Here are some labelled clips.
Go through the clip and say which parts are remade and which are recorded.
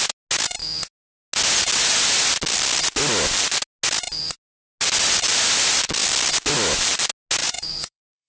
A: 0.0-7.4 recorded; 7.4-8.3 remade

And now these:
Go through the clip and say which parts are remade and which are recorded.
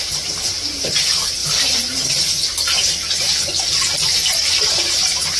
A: 0.0-1.4 recorded; 1.4-2.1 remade; 2.1-5.4 recorded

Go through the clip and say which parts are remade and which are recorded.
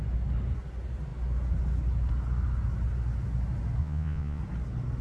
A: 0.0-3.8 recorded; 3.8-4.4 remade; 4.4-5.0 recorded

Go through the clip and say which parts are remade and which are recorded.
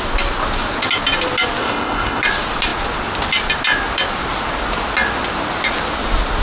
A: 0.0-1.6 recorded; 1.6-2.2 remade; 2.2-6.4 recorded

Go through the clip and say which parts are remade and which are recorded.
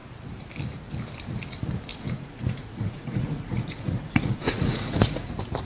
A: 0.0-1.9 recorded; 1.9-5.3 remade; 5.3-5.7 recorded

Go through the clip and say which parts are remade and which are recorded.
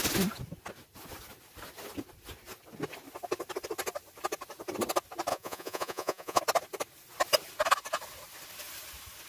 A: 0.0-5.3 recorded; 5.3-6.4 remade; 6.4-9.3 recorded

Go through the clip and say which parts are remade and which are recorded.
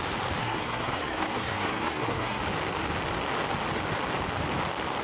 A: 0.0-0.4 recorded; 0.4-2.4 remade; 2.4-5.0 recorded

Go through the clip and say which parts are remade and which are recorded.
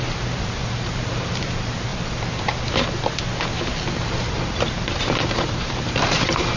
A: 0.0-1.9 remade; 1.9-3.9 recorded; 3.9-6.6 remade